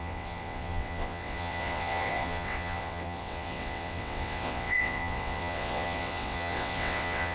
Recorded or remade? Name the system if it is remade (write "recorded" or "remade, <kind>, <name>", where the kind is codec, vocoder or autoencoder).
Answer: remade, vocoder, WaveNeXt